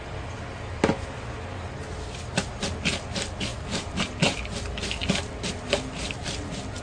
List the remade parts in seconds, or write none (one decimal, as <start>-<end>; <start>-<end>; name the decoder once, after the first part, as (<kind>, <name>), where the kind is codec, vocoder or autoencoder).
none